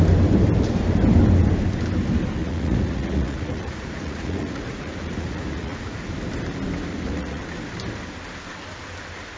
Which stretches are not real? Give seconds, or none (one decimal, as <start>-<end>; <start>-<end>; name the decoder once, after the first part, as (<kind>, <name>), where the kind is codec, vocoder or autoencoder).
2.4-6.1 (vocoder, Vocos); 6.9-7.4